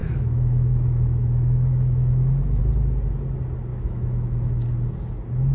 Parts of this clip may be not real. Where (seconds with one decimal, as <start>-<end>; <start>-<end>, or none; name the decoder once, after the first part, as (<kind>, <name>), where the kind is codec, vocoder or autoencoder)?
0.0-2.6 (autoencoder, DAC-VAE); 3.7-4.6

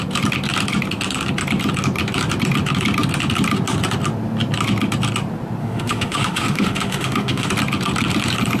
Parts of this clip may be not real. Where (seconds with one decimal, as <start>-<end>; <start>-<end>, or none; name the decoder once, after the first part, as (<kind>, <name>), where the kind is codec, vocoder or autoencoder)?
5.6-7.5 (autoencoder, DAC-VAE)

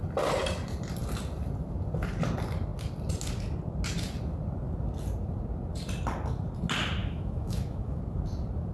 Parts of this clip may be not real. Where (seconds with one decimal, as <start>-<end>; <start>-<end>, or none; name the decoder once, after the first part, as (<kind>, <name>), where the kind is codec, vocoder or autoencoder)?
7.0-8.0 (autoencoder, DAC-VAE)

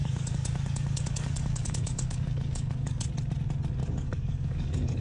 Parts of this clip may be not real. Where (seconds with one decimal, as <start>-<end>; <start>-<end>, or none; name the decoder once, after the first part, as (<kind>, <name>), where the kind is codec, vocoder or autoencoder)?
0.0-3.0 (codec, DAC); 3.8-5.0